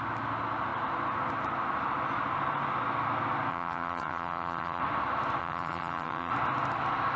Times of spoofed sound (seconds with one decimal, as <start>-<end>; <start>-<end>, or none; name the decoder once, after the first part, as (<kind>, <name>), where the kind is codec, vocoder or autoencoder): 3.5-4.8 (vocoder, HiFi-GAN); 5.4-6.3